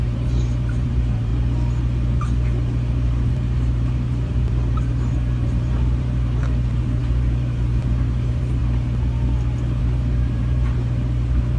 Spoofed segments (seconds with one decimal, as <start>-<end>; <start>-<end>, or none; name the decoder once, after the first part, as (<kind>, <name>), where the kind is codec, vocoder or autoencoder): 0.0-1.3 (vocoder, BigVGAN v2); 3.3-8.6; 9.8-11.6